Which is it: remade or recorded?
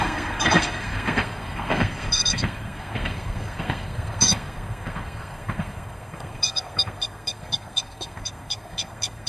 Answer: remade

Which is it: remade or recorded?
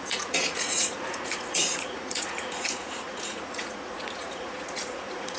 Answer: remade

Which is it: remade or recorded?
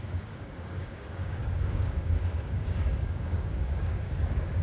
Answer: remade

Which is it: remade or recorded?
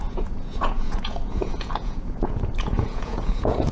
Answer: remade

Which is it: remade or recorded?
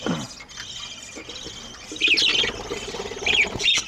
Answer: recorded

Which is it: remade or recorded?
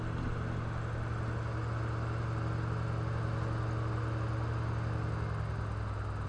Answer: recorded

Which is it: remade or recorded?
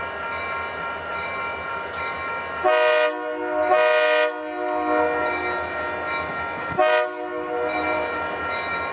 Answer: recorded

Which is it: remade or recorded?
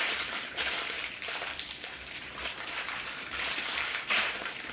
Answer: remade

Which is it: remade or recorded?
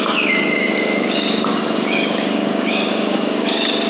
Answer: remade